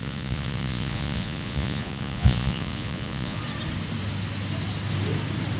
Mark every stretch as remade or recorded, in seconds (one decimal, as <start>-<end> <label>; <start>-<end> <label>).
0.0-3.4 remade; 3.4-5.6 recorded